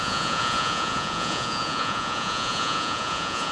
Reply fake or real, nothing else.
fake